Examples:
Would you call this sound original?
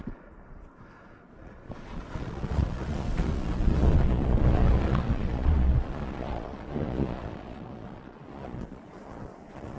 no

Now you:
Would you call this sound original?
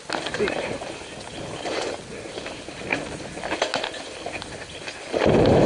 yes